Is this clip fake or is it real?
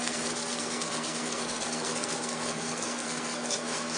fake